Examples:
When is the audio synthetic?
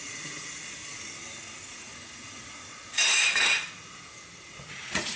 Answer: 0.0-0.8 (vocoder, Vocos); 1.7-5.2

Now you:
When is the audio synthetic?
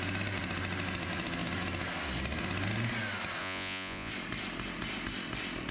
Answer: 3.4-4.1 (vocoder, Vocos)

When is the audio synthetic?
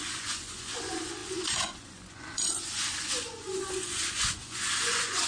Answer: 0.0-5.3 (vocoder, Vocos)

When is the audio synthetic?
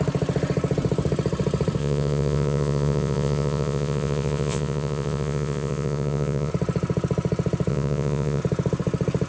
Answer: 1.8-6.5 (vocoder, Vocos); 7.7-8.4